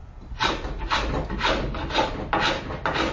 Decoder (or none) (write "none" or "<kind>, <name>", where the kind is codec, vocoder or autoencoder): none